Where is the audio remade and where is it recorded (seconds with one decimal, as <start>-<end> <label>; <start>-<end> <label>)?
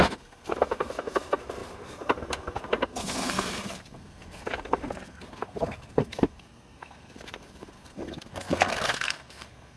0.0-9.8 remade